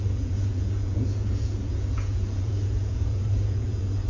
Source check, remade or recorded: remade